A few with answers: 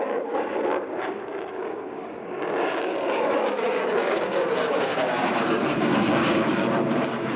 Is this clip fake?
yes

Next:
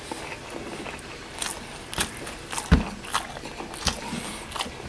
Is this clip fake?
no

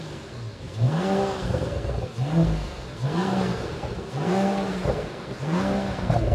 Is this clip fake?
yes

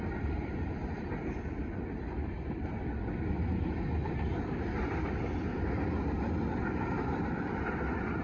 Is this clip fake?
yes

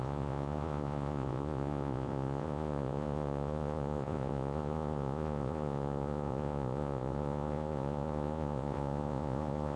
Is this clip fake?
yes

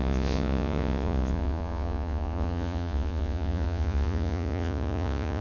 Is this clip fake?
yes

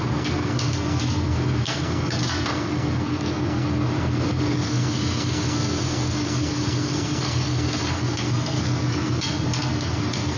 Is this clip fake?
yes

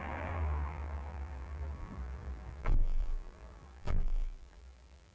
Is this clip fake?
yes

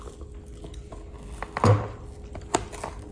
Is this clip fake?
no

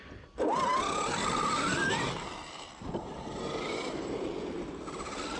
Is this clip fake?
no